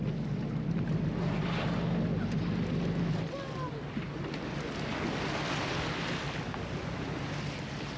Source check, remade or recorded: recorded